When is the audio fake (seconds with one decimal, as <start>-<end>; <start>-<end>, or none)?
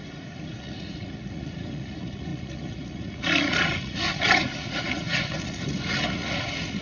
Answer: 0.0-6.8